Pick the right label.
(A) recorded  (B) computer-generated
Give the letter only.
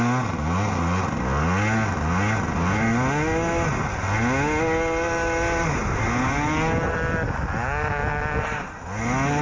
A